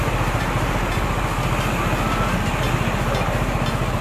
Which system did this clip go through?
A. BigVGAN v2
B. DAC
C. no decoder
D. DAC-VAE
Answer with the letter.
C